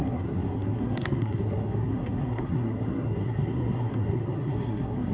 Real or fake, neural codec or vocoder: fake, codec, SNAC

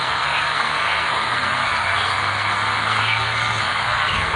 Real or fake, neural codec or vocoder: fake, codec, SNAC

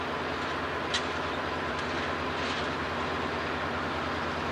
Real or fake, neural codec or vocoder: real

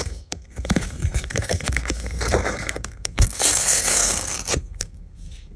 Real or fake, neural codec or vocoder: fake, codec, SNAC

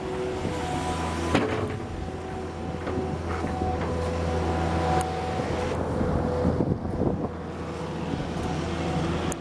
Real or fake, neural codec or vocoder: real